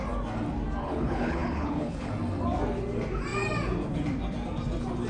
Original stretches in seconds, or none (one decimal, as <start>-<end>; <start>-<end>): 0.0-0.8; 2.1-5.1

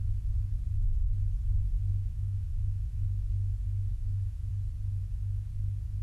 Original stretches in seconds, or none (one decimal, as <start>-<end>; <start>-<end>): 0.0-1.9; 3.2-3.9; 4.5-5.0; 5.5-6.0

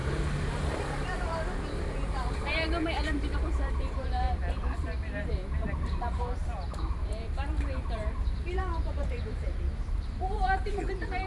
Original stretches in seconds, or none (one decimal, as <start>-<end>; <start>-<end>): none